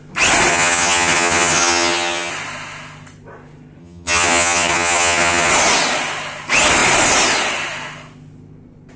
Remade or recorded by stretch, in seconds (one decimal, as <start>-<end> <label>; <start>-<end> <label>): 0.0-0.5 recorded; 0.5-2.3 remade; 2.3-3.8 recorded; 3.8-5.5 remade; 5.5-9.0 recorded